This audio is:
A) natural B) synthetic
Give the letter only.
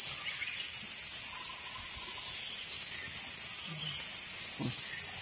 A